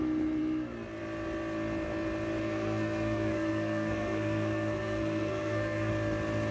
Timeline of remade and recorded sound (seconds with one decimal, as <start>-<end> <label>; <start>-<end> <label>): 0.0-2.4 recorded; 2.4-5.9 remade; 5.9-6.5 recorded